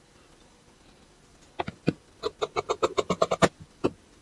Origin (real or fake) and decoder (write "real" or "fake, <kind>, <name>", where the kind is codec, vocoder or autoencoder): real